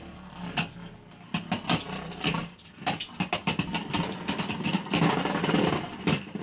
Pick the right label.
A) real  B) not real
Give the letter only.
A